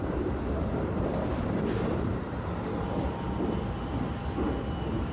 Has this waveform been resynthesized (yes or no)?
no